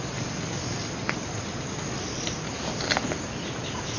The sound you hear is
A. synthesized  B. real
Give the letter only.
B